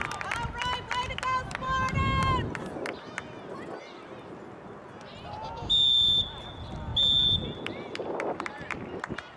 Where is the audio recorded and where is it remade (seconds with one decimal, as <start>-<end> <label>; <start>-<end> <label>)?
0.0-9.4 recorded